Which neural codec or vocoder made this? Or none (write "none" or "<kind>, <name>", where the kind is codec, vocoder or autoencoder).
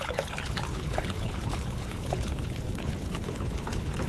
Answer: codec, HILCodec